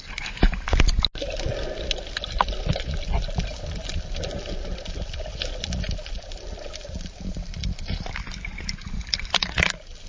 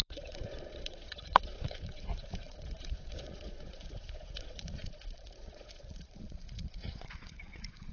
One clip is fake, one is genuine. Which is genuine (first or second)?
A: first